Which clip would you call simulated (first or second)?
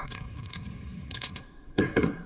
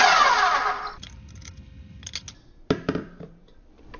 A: first